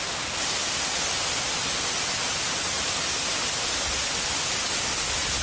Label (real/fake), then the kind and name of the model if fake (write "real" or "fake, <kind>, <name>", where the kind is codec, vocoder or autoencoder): real